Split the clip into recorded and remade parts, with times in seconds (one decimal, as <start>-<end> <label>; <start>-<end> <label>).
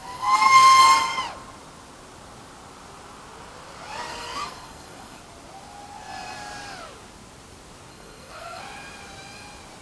0.0-0.8 remade; 0.8-4.1 recorded; 4.1-5.2 remade; 5.2-7.9 recorded; 7.9-8.6 remade; 8.6-9.8 recorded